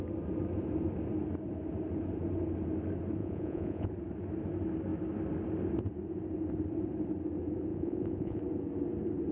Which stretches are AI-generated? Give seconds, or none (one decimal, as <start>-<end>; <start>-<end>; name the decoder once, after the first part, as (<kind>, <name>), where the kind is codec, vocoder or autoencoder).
3.2-3.9 (vocoder, Vocos); 7.7-8.4